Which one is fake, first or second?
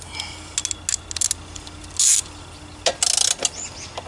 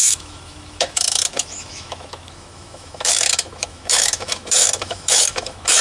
second